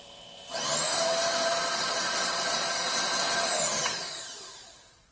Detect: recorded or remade remade